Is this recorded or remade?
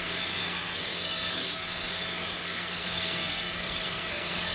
remade